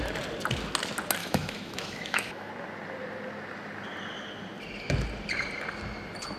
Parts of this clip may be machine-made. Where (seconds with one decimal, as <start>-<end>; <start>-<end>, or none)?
1.2-2.5